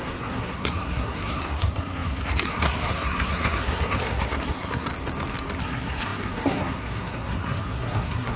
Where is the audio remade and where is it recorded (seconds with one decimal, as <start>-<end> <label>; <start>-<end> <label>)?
0.0-4.9 remade; 4.9-5.6 recorded; 5.6-8.4 remade